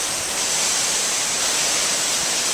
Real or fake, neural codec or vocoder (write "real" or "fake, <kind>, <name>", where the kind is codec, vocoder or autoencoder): fake, vocoder, BigVGAN v2